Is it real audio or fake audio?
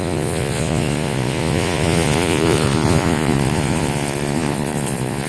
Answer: fake